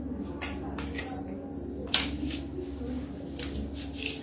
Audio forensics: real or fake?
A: real